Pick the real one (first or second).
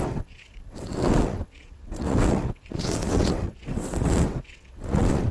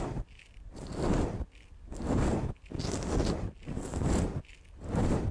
second